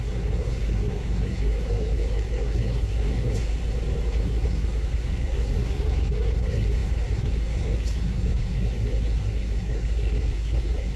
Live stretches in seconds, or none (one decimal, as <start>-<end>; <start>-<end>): 3.6-4.1